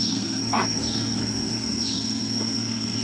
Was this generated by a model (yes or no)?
yes